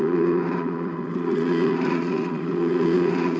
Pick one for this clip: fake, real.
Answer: fake